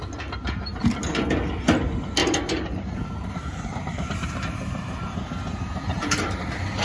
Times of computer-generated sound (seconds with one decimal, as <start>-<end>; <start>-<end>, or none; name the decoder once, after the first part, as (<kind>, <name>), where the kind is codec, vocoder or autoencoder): 2.2-6.3 (vocoder, BigVGAN v2)